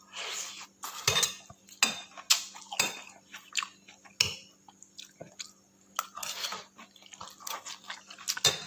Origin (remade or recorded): recorded